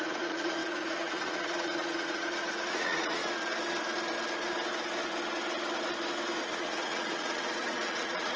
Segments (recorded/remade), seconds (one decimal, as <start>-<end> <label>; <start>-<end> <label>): 0.0-3.2 remade; 3.2-6.4 recorded; 6.4-8.4 remade